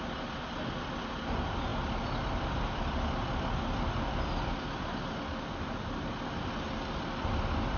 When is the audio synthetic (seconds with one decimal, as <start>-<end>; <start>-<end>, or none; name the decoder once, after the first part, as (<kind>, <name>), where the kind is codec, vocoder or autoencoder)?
none